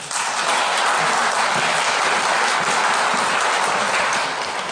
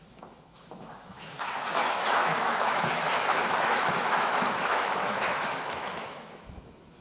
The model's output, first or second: second